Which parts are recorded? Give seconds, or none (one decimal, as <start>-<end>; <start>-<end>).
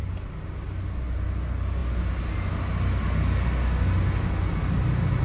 0.0-5.2